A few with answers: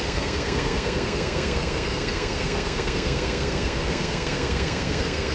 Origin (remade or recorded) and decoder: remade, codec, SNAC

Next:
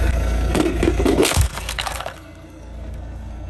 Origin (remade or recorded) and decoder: remade, codec, SNAC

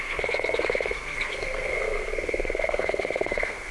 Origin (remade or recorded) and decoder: remade, codec, SNAC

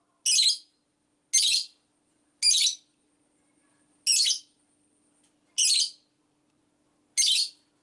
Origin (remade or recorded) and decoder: recorded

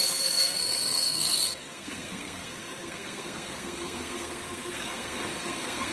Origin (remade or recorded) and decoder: remade, codec, SNAC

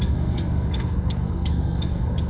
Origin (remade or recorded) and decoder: remade, codec, SNAC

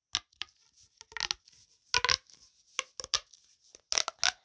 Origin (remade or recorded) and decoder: recorded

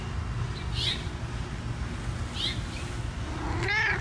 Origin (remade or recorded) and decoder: recorded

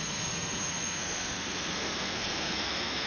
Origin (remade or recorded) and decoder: remade, codec, SNAC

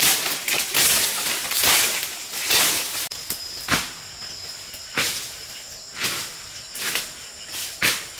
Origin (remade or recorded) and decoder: recorded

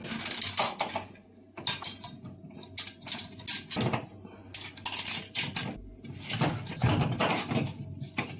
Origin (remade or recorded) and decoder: recorded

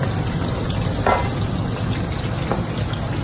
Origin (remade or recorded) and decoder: recorded